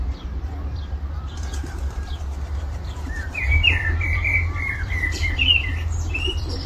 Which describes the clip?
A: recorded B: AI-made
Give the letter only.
B